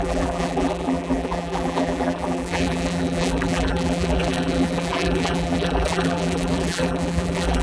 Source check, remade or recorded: remade